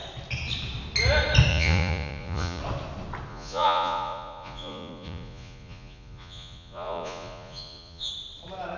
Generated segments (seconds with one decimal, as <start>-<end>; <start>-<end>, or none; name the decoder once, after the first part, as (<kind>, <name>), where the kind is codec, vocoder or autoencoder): 1.5-2.6 (vocoder, Vocos); 3.3-8.1